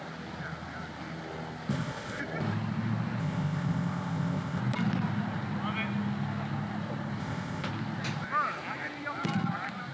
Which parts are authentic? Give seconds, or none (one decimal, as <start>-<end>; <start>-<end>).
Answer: 0.0-1.7; 2.2-3.2; 4.6-7.2; 7.7-9.9